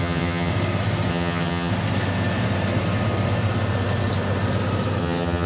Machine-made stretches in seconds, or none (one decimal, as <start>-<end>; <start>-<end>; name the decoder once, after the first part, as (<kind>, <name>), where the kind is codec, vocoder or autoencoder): 0.0-0.5 (vocoder, HiFi-GAN); 1.1-1.7; 5.0-5.5

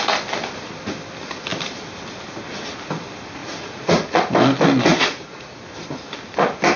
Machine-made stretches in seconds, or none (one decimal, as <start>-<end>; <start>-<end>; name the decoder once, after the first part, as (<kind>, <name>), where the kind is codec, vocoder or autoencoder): 3.4-4.2 (vocoder, Vocos); 4.9-5.5

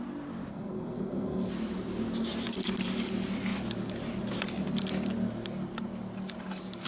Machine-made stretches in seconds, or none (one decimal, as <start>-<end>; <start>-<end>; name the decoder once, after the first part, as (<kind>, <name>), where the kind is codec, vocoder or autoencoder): 0.5-1.5 (codec, SNAC)